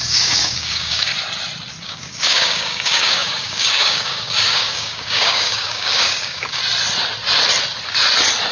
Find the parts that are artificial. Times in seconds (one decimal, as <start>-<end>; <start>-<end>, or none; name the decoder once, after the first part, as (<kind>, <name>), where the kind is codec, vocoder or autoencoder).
0.0-1.1 (codec, DAC); 1.8-6.6